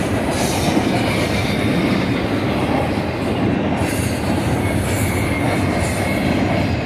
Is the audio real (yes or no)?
yes